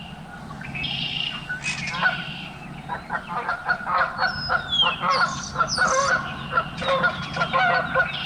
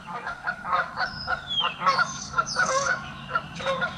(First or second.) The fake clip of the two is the second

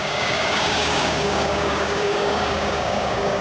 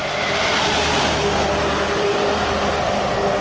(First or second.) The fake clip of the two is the first